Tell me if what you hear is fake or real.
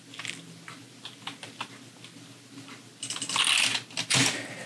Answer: real